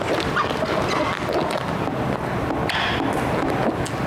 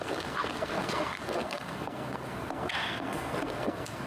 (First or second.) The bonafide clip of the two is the first